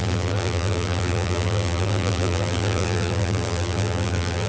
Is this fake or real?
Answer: fake